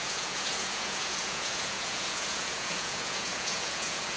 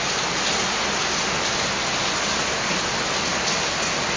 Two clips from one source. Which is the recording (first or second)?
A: second